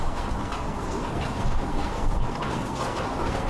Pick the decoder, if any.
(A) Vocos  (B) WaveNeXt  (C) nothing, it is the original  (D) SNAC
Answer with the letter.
D